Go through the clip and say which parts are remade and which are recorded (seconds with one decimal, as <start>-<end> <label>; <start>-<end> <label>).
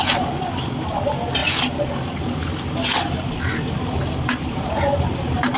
0.0-5.6 recorded